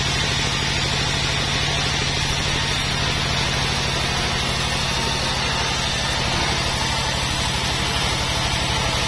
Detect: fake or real real